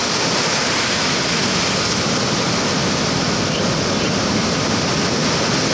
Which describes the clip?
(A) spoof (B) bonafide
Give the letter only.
B